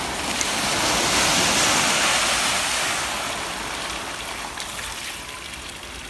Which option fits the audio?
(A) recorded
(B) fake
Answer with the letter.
A